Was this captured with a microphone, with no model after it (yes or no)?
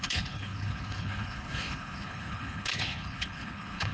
no